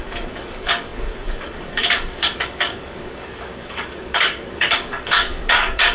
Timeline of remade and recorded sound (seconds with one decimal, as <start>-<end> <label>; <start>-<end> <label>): 0.0-5.9 remade